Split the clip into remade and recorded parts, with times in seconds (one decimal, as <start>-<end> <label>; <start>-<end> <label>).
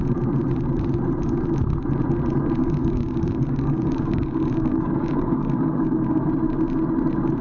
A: 0.0-2.6 recorded; 2.6-6.3 remade; 6.3-7.4 recorded